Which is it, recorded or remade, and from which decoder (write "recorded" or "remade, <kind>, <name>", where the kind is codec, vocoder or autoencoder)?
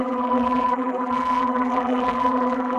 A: remade, vocoder, BigVGAN v2